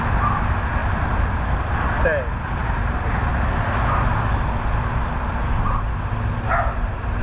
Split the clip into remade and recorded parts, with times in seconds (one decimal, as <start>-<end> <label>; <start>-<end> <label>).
0.0-0.8 recorded; 0.8-1.6 remade; 1.6-2.6 recorded; 2.6-3.3 remade; 3.3-5.0 recorded; 5.0-5.6 remade; 5.6-7.2 recorded